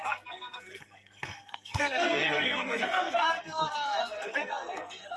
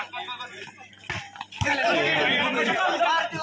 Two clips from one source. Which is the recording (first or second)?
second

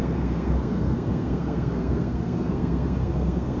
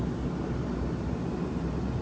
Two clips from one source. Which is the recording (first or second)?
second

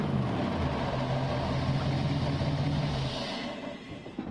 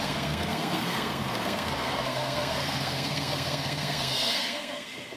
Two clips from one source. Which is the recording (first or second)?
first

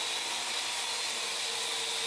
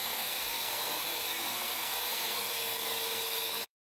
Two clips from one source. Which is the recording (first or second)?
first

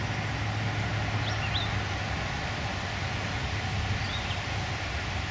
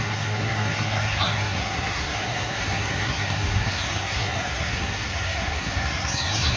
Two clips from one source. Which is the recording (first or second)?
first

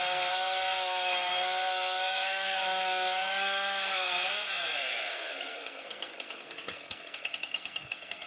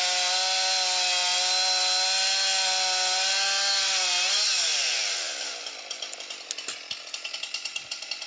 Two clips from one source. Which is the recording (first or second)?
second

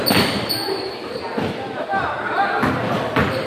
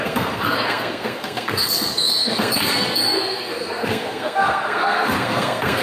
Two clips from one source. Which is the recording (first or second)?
first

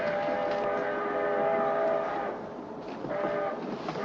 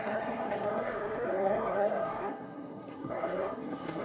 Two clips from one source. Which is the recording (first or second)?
first